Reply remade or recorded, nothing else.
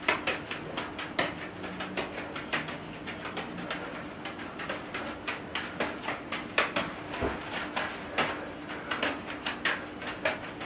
recorded